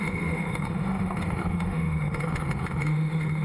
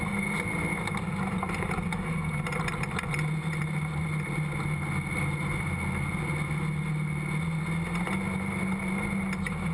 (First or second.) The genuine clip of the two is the second